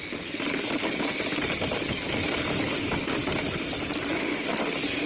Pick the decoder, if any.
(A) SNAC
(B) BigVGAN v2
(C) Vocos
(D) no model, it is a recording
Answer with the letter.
B